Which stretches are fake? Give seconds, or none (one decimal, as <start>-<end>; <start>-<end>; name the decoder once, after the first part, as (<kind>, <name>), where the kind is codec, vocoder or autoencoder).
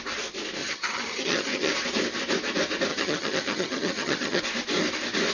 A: 0.6-1.7 (vocoder, HiFi-GAN); 2.9-4.4